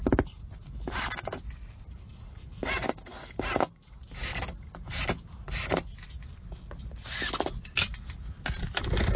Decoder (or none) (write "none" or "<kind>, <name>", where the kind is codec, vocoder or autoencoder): none